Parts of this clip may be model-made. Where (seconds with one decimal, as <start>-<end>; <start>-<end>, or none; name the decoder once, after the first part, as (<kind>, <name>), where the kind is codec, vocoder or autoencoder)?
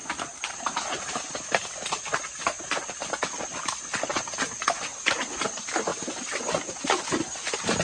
none